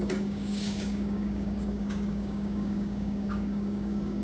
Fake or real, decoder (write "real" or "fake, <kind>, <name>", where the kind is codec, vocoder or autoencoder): fake, codec, DAC